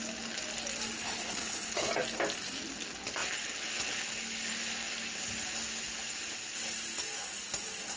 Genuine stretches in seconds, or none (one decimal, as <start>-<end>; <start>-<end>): 0.0-1.0; 1.9-8.0